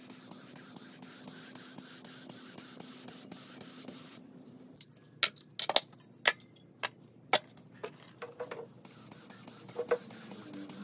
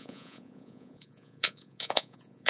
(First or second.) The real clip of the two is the first